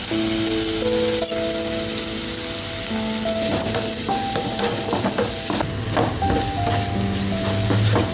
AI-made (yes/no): no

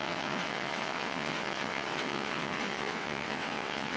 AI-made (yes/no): yes